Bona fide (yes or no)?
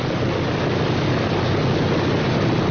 yes